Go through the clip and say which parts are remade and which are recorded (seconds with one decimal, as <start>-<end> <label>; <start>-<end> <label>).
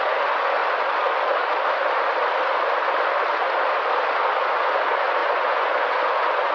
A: 0.0-0.6 remade; 0.6-4.4 recorded; 4.4-6.5 remade